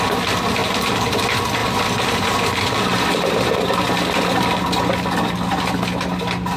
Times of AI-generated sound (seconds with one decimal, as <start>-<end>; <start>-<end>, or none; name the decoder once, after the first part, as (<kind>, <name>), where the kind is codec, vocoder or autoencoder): 0.6-1.2 (vocoder, BigVGAN v2); 1.6-3.7